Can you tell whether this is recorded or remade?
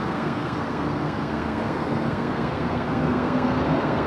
remade